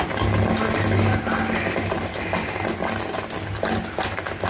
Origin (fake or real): real